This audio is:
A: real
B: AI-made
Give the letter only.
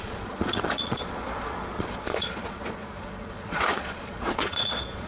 B